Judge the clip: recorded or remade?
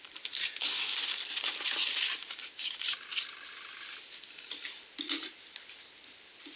recorded